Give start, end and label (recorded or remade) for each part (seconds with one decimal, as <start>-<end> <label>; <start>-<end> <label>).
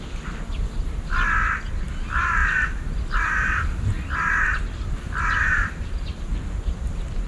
0.0-7.3 recorded